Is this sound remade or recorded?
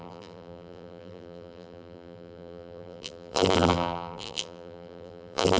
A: remade